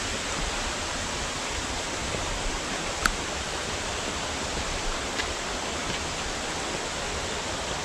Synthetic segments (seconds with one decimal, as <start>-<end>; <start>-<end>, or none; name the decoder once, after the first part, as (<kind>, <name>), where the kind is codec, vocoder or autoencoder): 2.0-2.5 (vocoder, BigVGAN v2)